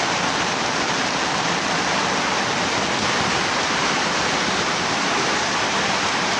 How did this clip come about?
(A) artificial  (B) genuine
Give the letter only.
B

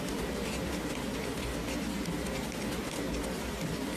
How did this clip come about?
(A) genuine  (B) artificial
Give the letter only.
A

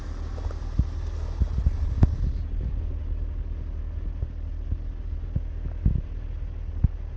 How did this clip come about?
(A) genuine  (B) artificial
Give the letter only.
A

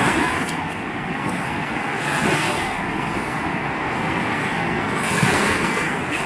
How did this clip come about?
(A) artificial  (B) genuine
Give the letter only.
A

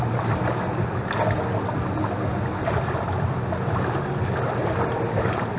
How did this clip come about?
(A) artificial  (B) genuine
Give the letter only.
B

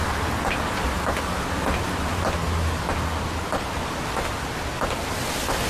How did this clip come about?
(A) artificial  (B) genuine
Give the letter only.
B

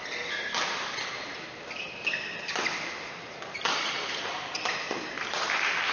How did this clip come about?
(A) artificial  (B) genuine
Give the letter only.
B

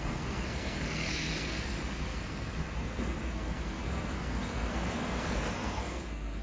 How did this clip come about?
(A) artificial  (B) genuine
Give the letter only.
A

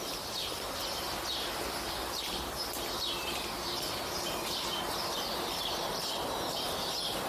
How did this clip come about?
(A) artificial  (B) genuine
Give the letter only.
B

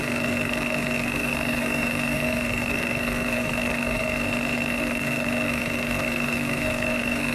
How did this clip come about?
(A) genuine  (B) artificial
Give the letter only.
B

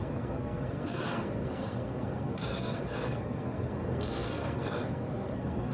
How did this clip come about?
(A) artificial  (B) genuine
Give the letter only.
A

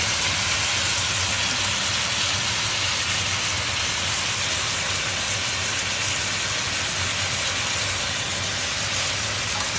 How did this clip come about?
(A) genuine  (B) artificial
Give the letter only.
A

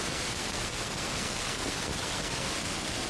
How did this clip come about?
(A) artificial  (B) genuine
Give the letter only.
A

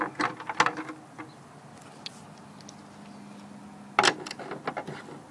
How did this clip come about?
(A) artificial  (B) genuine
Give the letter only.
B